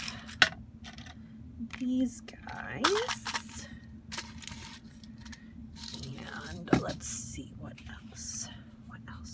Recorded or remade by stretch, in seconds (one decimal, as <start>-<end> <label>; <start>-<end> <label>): 0.0-5.6 recorded; 5.6-8.9 remade; 8.9-9.3 recorded